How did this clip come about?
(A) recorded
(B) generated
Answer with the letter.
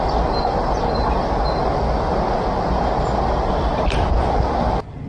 A